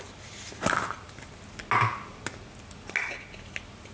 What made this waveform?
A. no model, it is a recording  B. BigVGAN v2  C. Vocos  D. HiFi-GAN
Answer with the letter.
A